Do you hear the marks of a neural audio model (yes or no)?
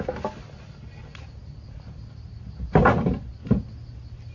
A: no